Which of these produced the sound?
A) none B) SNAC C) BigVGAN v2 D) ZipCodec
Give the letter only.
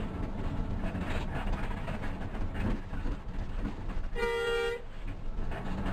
A